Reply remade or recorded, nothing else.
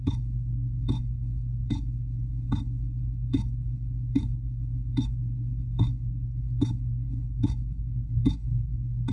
remade